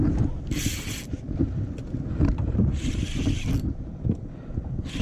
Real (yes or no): yes